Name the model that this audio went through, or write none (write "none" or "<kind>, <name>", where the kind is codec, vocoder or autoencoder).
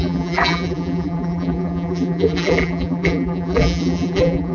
vocoder, BigVGAN v2